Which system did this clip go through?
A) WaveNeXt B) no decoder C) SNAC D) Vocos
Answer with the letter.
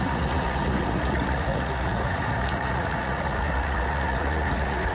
D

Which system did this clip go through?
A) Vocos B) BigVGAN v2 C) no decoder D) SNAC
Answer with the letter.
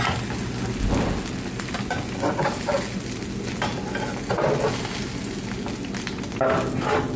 C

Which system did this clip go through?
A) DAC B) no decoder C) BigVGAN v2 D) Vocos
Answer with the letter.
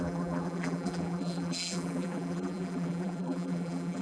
C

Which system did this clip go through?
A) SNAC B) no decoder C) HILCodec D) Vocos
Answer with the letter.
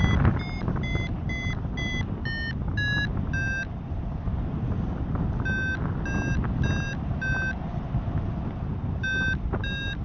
B